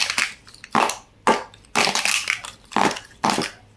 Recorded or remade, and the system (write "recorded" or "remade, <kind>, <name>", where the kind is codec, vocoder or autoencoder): recorded